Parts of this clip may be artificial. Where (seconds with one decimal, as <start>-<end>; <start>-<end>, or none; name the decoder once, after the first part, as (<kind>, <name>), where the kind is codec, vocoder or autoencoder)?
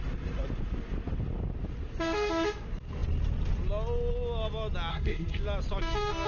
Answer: 4.9-5.4 (codec, SNAC)